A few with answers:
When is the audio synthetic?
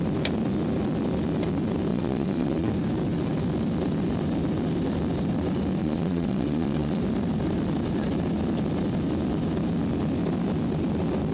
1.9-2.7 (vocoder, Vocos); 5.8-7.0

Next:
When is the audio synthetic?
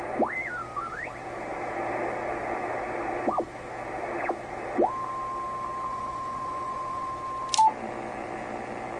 5.9-7.1 (vocoder, Vocos)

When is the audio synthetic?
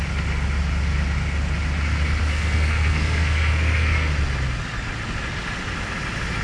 2.3-4.1 (codec, SNAC)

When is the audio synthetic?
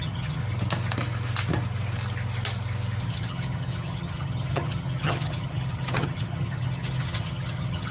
0.0-0.4 (vocoder, HiFi-GAN); 3.0-7.9